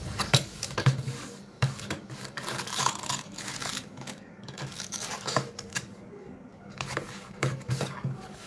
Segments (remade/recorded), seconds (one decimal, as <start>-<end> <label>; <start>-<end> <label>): 0.0-8.5 remade